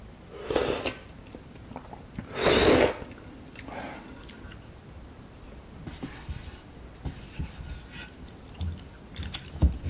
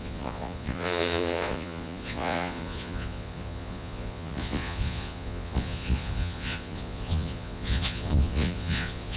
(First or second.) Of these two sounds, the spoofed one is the second